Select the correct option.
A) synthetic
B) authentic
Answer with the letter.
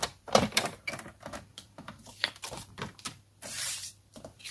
A